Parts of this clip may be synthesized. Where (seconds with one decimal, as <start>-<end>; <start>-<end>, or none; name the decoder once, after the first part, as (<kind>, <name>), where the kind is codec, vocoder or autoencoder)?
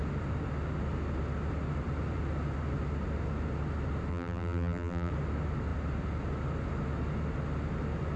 4.1-5.1 (vocoder, BigVGAN v2)